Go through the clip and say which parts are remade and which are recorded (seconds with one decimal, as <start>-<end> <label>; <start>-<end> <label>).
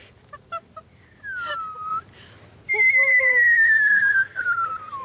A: 0.0-3.1 recorded; 3.1-4.4 remade; 4.4-5.0 recorded